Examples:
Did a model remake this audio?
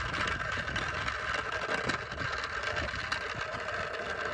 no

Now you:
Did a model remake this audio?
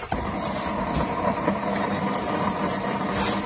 yes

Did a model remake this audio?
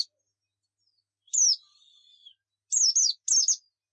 no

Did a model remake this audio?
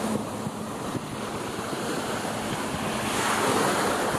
no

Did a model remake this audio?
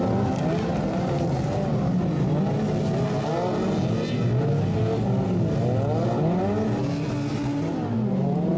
no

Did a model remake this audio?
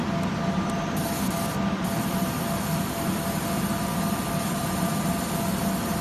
yes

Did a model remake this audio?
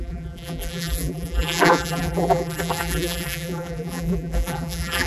yes